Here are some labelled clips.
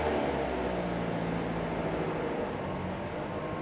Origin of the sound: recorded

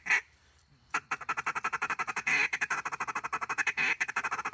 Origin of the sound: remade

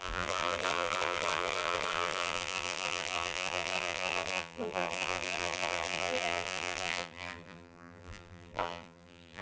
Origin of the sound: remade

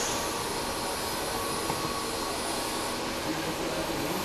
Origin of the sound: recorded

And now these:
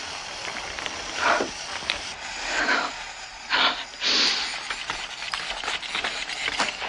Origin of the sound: remade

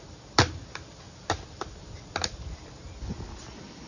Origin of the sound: recorded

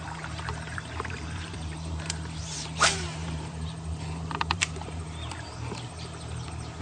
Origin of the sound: remade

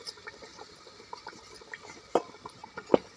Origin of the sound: remade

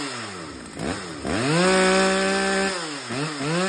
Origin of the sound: recorded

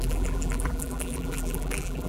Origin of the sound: remade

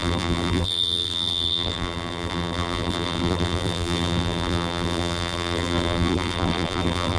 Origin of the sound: remade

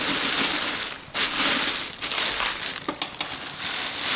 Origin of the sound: recorded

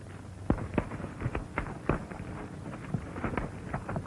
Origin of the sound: recorded